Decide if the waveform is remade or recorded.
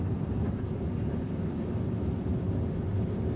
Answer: remade